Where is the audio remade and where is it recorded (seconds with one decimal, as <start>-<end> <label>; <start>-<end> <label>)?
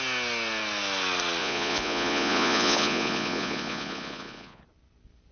0.0-1.4 recorded; 1.4-4.6 remade; 4.6-5.3 recorded